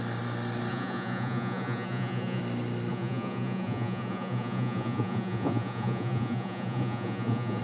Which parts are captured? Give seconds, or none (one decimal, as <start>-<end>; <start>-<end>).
0.0-0.7; 2.4-2.9